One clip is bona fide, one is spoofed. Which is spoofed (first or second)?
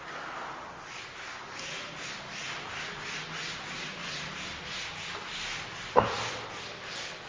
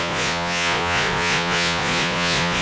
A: second